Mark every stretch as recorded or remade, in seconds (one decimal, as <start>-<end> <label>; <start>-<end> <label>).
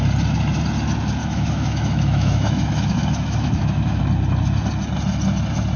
0.0-1.2 recorded; 1.2-4.0 remade; 4.0-5.8 recorded